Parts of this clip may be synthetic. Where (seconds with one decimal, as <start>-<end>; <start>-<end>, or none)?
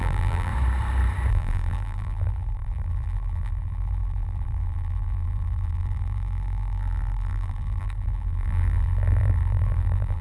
0.0-0.5; 1.3-10.2